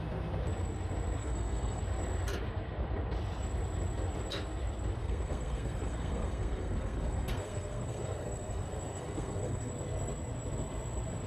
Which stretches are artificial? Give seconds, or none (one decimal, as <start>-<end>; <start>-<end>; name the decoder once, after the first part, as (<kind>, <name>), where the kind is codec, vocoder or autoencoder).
1.2-1.8 (codec, SNAC); 5.0-9.7